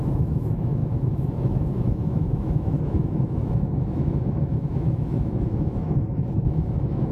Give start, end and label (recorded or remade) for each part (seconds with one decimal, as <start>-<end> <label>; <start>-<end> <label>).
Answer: 0.0-7.1 remade